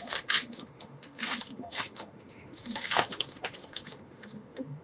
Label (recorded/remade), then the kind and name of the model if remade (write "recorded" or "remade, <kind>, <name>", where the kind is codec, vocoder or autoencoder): remade, autoencoder, DAC-VAE